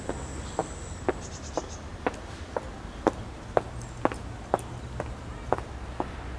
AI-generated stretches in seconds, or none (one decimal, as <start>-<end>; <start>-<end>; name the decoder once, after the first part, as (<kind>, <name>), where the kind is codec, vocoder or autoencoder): none